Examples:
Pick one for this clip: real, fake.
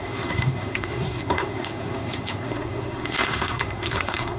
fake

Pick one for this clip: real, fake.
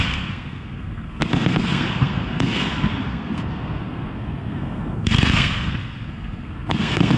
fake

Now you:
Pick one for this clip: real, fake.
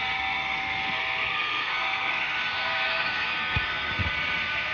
fake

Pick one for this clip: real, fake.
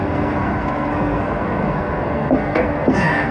fake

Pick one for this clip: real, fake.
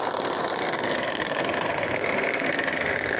fake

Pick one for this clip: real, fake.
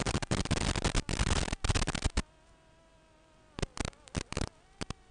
real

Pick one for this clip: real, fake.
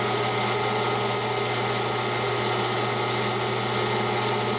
real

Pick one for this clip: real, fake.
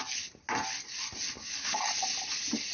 real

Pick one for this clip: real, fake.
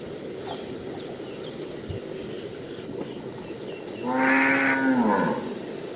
real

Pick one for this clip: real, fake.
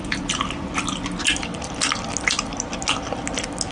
real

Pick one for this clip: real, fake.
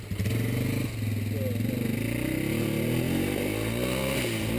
real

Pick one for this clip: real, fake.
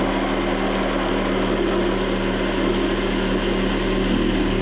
real